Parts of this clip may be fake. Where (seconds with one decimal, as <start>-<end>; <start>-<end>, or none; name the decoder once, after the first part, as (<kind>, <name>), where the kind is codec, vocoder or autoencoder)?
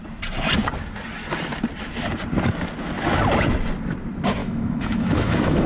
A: 4.4-5.7 (autoencoder, DAC-VAE)